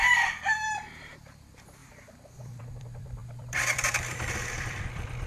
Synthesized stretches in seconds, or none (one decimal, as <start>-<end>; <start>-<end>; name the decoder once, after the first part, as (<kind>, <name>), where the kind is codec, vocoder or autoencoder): 0.0-5.3 (vocoder, BigVGAN v2)